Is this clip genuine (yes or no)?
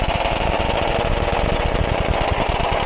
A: yes